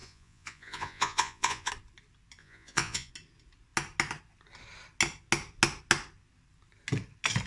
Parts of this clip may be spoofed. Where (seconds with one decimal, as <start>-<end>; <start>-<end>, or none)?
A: 0.0-1.7; 2.4-3.1